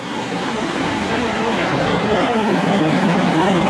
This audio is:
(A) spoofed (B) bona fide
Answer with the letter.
A